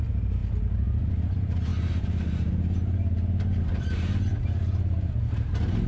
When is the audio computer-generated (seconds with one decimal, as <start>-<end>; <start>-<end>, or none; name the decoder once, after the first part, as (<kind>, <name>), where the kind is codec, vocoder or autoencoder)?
none